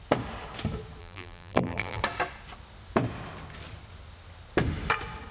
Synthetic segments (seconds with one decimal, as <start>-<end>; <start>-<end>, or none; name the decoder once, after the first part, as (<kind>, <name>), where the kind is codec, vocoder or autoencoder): 1.0-2.0 (vocoder, BigVGAN v2)